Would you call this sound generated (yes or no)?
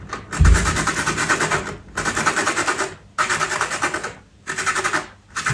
no